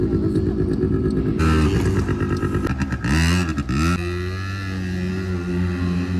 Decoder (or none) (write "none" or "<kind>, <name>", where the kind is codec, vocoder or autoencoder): none